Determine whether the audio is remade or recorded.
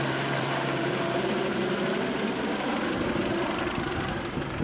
remade